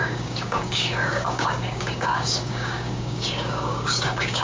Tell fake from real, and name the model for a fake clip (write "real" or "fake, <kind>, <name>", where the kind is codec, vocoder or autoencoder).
fake, codec, DAC